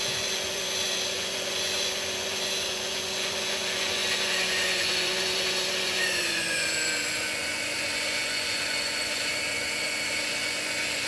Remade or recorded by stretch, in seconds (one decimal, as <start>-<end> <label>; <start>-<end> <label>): 0.0-11.1 remade